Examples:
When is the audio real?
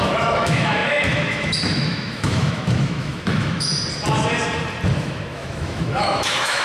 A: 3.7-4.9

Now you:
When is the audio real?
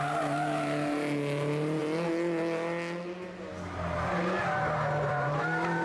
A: 0.0-5.8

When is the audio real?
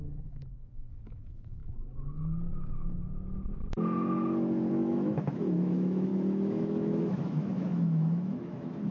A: 1.6-4.7